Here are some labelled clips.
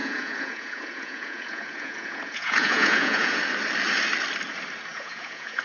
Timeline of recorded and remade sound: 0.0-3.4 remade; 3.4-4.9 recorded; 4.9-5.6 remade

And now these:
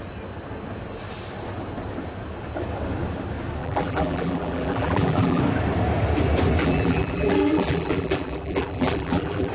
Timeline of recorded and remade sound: 0.0-3.6 recorded; 3.6-5.4 remade; 5.4-6.6 recorded; 6.6-9.5 remade

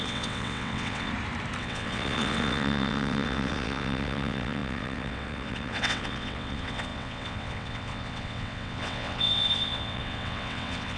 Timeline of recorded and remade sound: 0.0-1.1 remade; 1.1-1.6 recorded; 1.6-11.0 remade